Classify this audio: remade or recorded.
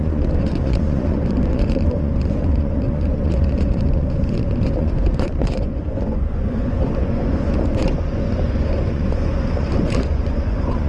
remade